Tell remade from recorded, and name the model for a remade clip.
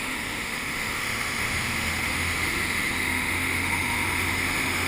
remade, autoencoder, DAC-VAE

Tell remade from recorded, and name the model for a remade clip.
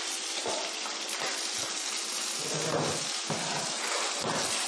recorded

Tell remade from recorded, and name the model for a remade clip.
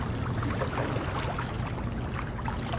recorded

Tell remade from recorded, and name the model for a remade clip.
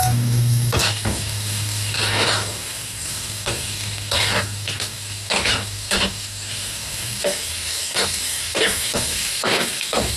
remade, codec, DAC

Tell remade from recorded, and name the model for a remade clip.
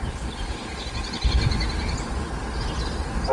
recorded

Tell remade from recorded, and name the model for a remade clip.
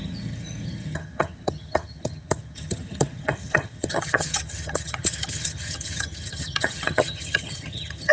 remade, vocoder, HiFi-GAN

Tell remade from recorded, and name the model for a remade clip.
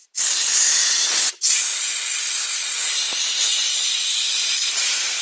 recorded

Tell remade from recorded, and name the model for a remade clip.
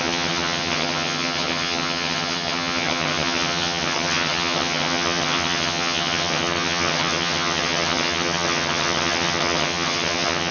remade, vocoder, HiFi-GAN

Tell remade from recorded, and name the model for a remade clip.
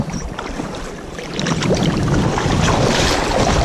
recorded